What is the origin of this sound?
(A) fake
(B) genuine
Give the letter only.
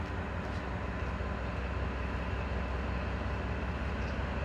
B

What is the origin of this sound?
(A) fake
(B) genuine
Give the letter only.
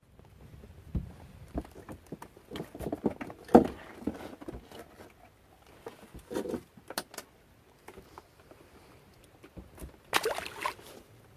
B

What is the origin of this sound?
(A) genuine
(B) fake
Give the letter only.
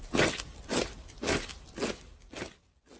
A